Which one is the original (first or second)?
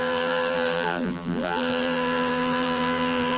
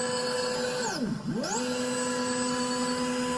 second